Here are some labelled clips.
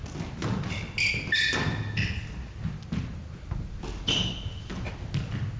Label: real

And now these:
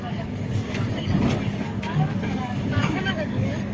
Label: fake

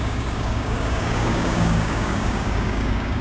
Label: fake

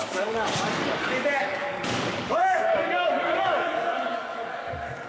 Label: fake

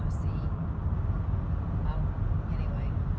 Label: real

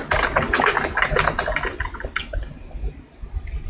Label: real